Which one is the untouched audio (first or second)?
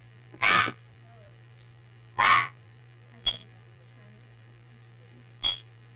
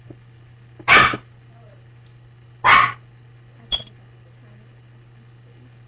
second